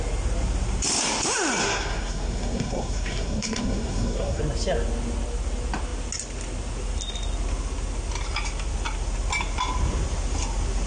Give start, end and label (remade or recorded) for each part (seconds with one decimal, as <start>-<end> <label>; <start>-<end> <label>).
0.0-1.6 recorded; 1.6-4.4 remade; 4.4-10.9 recorded